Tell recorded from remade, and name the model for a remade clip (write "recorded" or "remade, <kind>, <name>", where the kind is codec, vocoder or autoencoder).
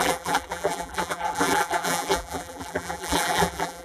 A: remade, vocoder, BigVGAN v2